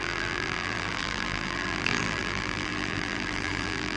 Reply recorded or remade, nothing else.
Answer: remade